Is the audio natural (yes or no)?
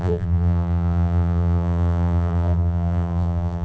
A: no